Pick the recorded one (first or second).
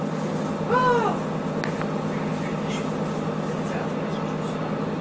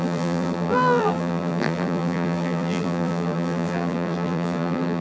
first